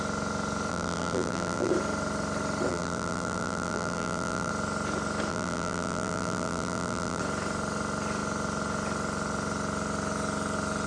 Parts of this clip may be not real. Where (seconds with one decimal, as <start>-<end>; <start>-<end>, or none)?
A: 0.7-1.7; 2.7-4.5; 5.3-7.2